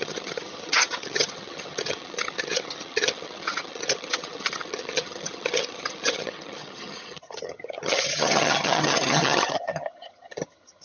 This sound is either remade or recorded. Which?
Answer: remade